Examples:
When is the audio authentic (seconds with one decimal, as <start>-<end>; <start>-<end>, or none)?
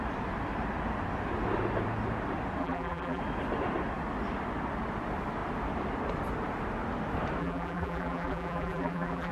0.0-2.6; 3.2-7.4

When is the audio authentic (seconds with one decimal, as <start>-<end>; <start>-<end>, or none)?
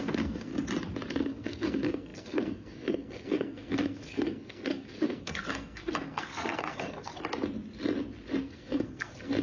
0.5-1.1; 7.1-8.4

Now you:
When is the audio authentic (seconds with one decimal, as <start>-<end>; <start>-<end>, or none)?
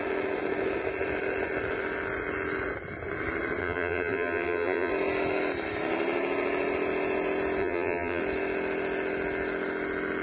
0.0-3.6; 4.9-7.6; 8.2-10.2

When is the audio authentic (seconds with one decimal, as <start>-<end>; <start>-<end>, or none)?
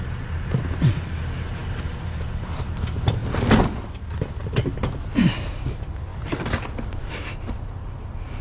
0.0-8.4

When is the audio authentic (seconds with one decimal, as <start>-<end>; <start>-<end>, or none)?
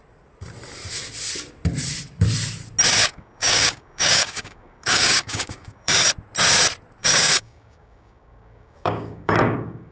0.0-3.0; 6.0-7.0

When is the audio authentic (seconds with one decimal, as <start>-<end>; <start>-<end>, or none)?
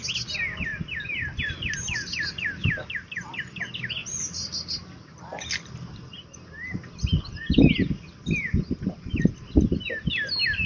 0.0-10.7